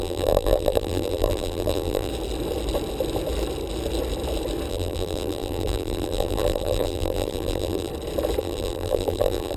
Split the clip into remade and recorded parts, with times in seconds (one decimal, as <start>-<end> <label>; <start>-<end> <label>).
0.0-2.1 remade; 2.1-4.7 recorded; 4.7-7.9 remade; 7.9-8.4 recorded; 8.4-9.6 remade